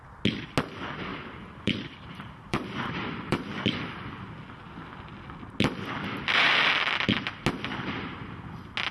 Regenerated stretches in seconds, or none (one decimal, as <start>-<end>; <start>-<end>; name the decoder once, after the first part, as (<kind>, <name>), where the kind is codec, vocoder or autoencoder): 1.1-3.8 (vocoder, BigVGAN v2)

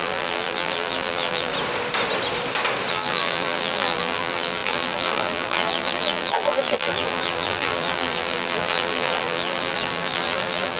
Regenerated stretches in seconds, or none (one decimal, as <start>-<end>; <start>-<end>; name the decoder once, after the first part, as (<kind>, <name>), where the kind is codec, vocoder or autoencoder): 0.0-1.5 (vocoder, BigVGAN v2); 2.9-10.8

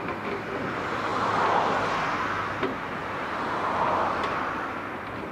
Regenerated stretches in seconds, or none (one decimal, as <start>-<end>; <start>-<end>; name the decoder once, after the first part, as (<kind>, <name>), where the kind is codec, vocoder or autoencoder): 3.0-4.5 (vocoder, BigVGAN v2)

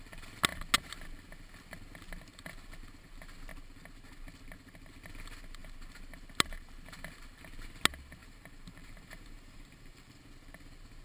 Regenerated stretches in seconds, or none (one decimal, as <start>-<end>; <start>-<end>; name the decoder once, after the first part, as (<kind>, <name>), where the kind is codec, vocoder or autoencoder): 8.2-10.2 (vocoder, BigVGAN v2)

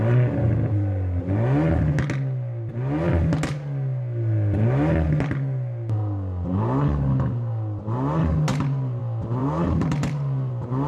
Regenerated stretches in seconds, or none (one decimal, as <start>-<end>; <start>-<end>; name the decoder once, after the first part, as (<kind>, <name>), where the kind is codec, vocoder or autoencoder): 8.5-9.0 (vocoder, BigVGAN v2); 9.4-10.5

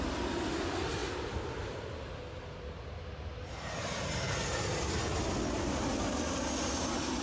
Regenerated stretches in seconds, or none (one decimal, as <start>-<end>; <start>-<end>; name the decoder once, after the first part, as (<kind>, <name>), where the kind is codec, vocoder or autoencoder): none

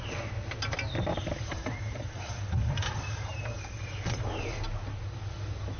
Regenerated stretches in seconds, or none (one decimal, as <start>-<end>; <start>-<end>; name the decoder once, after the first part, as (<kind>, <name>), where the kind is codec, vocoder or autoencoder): 1.1-4.6 (vocoder, BigVGAN v2)